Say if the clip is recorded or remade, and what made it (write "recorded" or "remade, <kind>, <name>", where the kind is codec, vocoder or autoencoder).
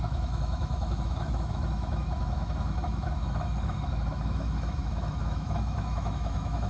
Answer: remade, autoencoder, DAC-VAE